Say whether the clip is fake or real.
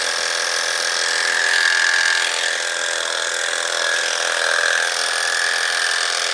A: real